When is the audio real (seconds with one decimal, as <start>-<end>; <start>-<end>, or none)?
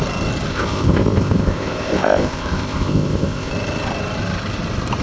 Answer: 0.0-0.5; 3.5-5.0